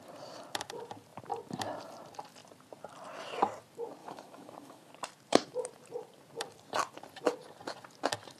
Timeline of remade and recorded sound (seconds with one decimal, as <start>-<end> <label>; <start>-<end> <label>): 0.0-4.0 recorded; 4.0-4.9 remade; 4.9-8.4 recorded